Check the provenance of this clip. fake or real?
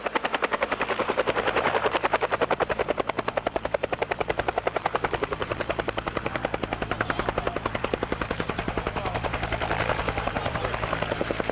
fake